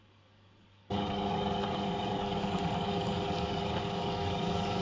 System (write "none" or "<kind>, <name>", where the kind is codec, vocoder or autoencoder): codec, DAC